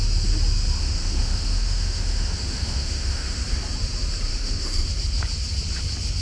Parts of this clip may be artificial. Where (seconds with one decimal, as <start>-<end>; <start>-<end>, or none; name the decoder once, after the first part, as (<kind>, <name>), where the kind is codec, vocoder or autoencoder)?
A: 0.8-3.4 (autoencoder, DAC-VAE); 4.3-4.9